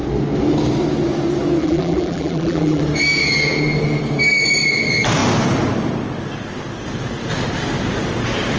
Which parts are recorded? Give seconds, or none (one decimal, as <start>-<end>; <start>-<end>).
0.0-1.6; 2.8-8.6